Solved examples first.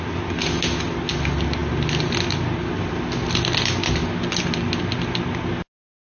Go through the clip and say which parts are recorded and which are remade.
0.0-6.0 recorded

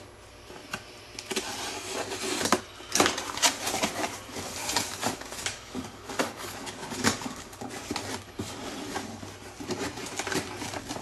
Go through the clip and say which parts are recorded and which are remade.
0.0-4.6 recorded; 4.6-7.7 remade; 7.7-11.0 recorded

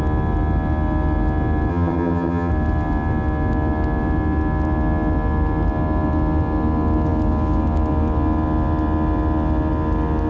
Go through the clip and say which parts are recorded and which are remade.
0.0-1.7 recorded; 1.7-2.5 remade; 2.5-10.3 recorded

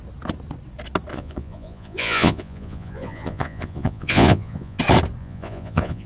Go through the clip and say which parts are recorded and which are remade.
0.0-1.1 recorded; 1.1-4.8 remade; 4.8-5.2 recorded; 5.2-6.1 remade

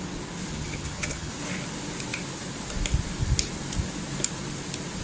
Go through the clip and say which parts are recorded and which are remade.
0.0-0.5 recorded; 0.5-1.3 remade; 1.3-5.0 recorded

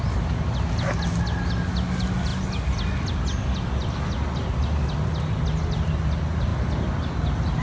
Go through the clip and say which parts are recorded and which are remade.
0.0-7.6 recorded

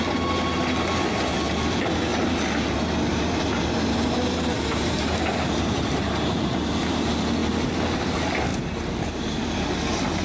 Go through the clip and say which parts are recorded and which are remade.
0.0-3.1 recorded; 3.1-6.8 remade; 6.8-8.5 recorded; 8.5-9.5 remade; 9.5-10.2 recorded

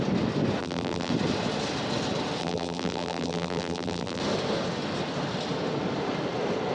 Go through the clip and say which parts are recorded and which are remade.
0.0-0.6 recorded; 0.6-1.1 remade; 1.1-2.4 recorded; 2.4-4.2 remade; 4.2-6.7 recorded